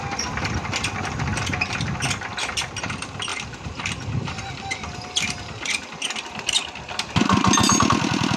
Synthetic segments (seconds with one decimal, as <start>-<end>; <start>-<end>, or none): none